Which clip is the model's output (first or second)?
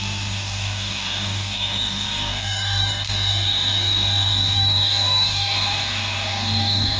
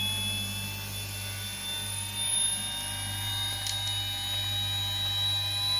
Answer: first